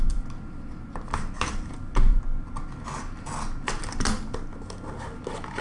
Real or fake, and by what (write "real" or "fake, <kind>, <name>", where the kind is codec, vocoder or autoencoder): real